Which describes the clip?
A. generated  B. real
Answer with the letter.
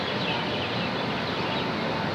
B